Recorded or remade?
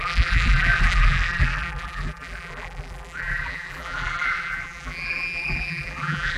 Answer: remade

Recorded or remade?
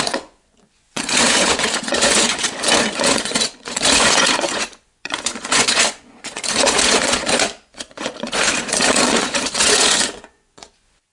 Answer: remade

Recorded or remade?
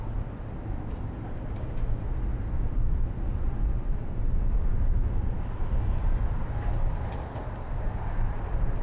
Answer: recorded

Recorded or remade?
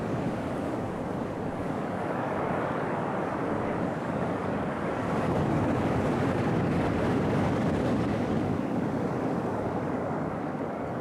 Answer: remade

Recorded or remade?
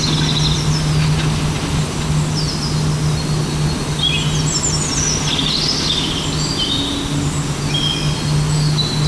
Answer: recorded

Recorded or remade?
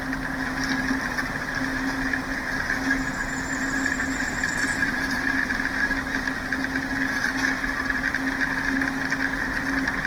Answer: recorded